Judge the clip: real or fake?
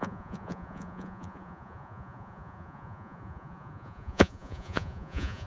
fake